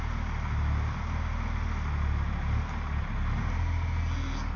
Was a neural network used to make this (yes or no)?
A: no